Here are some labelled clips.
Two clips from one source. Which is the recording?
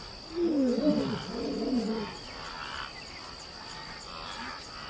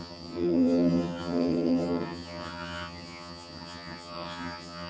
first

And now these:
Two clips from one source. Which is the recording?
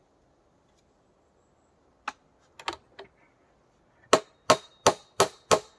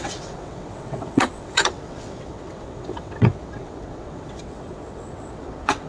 first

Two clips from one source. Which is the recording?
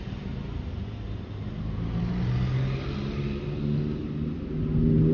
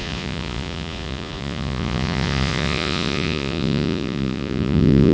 first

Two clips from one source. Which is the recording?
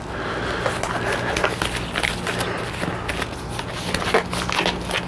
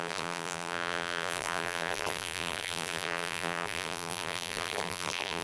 first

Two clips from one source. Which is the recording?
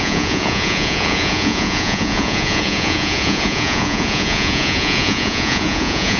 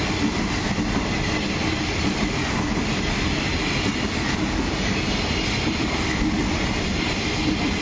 second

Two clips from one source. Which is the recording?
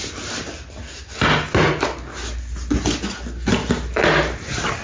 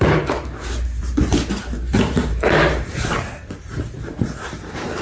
first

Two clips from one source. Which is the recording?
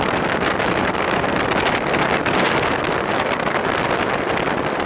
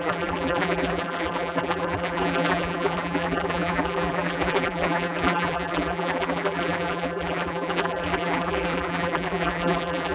first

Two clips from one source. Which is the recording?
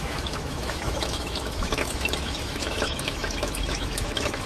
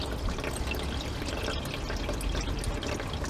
second